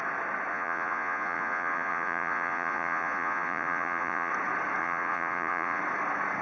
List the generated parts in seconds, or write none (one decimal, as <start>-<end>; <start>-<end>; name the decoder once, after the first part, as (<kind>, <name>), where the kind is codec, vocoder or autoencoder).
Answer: 0.5-4.3 (vocoder, Vocos); 4.8-5.8

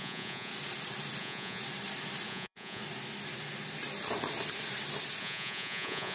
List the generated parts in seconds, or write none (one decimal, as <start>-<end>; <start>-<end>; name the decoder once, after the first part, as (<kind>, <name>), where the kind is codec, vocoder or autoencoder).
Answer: 0.0-0.5 (vocoder, Vocos); 1.2-1.6; 2.3-2.8; 5.2-6.1

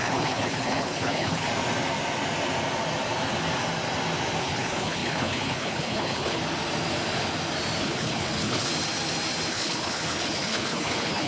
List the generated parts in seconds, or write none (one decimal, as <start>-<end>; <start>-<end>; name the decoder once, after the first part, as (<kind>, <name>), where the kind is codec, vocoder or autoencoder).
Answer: 0.0-1.5 (codec, HILCodec); 4.4-6.4; 7.8-8.7; 9.5-11.3

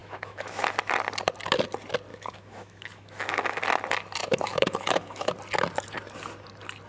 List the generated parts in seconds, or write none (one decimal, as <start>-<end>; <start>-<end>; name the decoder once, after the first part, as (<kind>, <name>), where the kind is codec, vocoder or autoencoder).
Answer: 0.0-0.6 (autoencoder, DAC-VAE); 2.1-3.6; 4.2-5.3

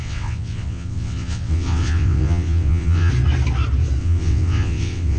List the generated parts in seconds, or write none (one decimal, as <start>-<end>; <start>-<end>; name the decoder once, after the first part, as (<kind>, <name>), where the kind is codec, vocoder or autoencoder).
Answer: 0.0-3.1 (vocoder, WaveNeXt); 4.0-5.2

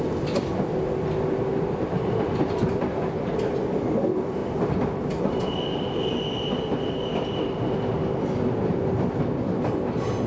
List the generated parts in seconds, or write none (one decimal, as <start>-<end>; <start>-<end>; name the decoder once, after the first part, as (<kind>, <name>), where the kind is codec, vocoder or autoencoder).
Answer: none